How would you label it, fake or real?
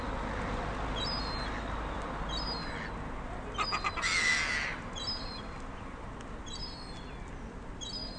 real